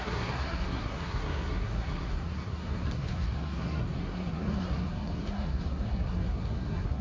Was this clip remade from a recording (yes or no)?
yes